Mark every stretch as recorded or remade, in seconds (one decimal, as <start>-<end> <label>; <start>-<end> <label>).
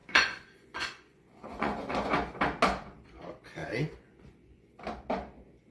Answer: 0.0-2.1 remade; 2.1-3.6 recorded; 3.6-4.8 remade; 4.8-5.7 recorded